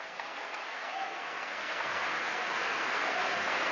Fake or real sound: fake